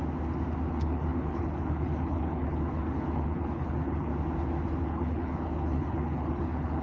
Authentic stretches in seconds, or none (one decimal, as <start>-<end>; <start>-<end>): 0.0-0.7; 4.1-4.8